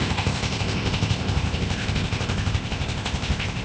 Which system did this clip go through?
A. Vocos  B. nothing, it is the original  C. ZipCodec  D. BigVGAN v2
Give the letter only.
C